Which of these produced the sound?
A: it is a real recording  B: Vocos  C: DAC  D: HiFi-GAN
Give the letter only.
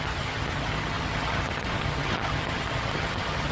D